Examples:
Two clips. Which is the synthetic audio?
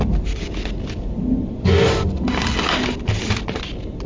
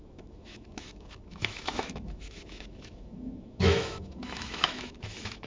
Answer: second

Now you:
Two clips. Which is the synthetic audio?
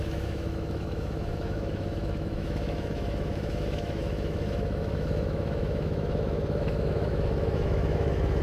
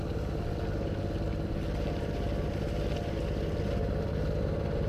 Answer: first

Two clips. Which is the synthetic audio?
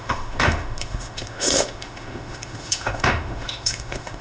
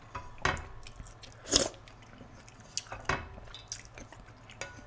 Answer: first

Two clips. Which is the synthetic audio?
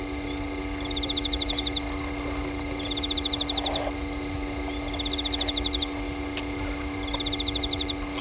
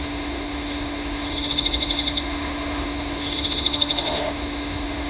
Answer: second